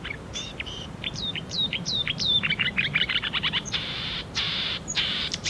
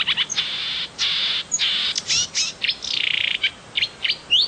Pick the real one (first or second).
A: second